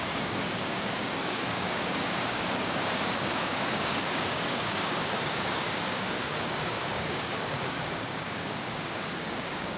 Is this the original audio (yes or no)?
no